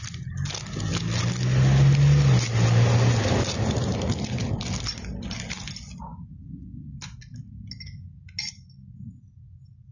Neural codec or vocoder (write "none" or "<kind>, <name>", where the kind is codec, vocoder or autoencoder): none